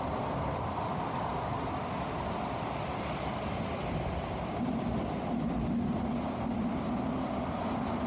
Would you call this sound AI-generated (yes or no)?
no